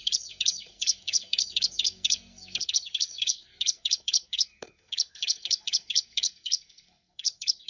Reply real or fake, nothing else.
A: fake